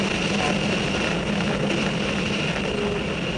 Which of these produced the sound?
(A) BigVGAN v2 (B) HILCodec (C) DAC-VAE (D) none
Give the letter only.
D